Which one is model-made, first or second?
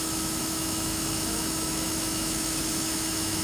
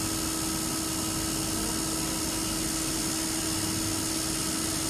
first